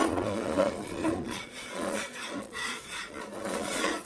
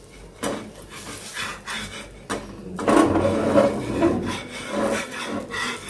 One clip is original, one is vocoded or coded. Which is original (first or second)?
second